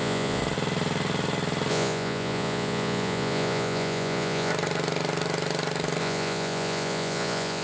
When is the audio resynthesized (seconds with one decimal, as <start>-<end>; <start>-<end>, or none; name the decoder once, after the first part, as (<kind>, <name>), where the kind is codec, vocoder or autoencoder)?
0.0-0.4 (vocoder, Vocos); 1.7-4.5; 6.0-7.6